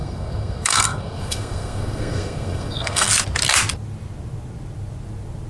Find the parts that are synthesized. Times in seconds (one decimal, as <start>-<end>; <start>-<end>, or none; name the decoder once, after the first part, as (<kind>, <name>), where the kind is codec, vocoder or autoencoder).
0.0-3.1 (codec, SNAC)